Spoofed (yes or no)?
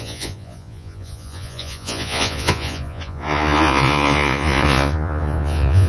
yes